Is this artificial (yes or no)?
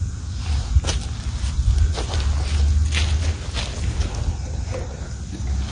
no